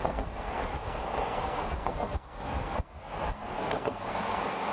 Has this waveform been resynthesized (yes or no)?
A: yes